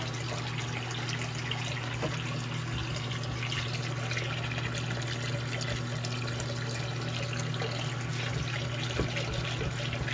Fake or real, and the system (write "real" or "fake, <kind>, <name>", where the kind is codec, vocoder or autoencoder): real